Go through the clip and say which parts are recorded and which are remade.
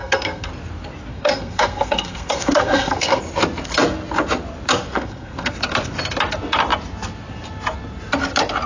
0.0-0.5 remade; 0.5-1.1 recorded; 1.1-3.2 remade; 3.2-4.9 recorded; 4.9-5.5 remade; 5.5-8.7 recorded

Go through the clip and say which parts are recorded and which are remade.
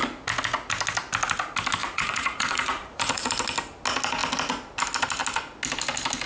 0.0-1.8 recorded; 1.8-3.3 remade; 3.3-6.3 recorded